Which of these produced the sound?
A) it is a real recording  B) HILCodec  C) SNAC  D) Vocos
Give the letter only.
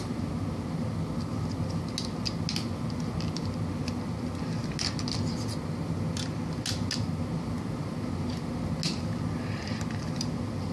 A